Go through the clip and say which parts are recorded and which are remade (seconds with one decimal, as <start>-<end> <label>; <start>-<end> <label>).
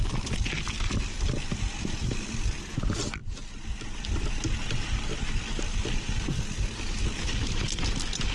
0.0-8.3 recorded